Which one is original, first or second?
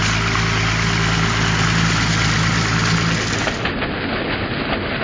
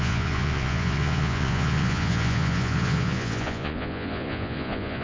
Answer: first